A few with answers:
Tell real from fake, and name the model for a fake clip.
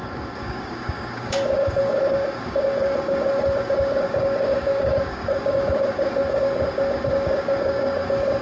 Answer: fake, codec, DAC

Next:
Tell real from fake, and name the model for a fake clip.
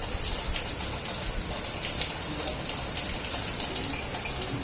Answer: real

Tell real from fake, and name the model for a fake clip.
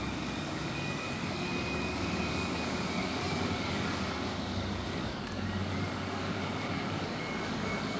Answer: fake, codec, DAC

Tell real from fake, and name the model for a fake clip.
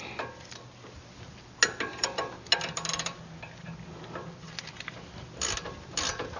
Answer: real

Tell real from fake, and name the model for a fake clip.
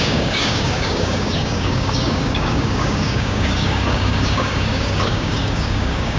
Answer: fake, codec, DAC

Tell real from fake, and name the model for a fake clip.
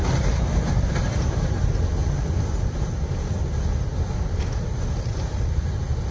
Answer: real